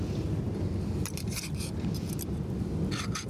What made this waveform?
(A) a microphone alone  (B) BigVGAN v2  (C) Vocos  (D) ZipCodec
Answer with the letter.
A